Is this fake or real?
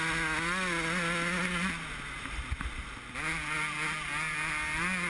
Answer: real